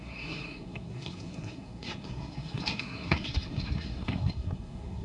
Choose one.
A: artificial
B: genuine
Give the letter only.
A